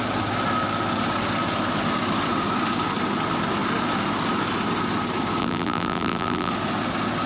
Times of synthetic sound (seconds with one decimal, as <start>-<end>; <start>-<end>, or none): 5.4-6.5